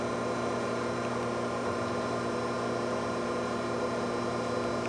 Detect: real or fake real